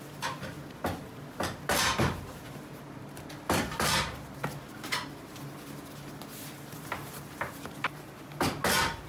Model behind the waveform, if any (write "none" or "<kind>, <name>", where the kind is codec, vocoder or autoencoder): none